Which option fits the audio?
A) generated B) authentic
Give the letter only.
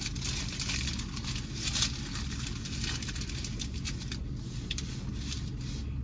B